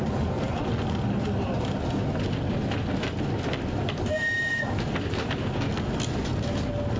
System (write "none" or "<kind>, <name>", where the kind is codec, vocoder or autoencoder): none